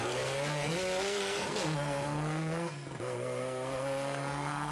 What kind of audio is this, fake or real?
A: fake